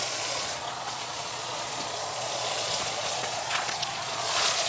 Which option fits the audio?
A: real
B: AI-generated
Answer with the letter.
B